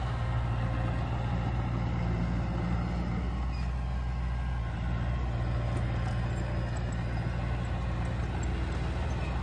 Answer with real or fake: real